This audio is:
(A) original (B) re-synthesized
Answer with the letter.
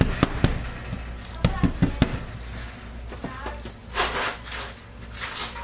A